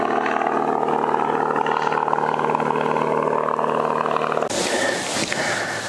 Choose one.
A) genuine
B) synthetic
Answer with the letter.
A